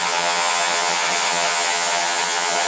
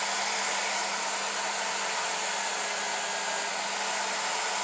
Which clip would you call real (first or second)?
second